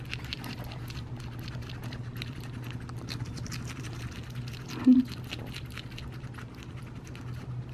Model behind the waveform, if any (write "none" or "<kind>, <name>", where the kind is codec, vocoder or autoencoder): none